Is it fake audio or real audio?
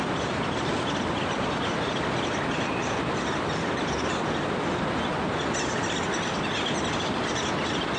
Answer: real